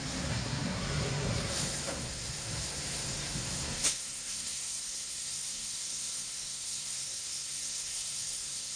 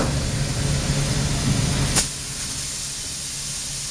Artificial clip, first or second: first